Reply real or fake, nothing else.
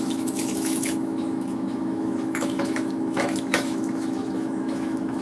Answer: fake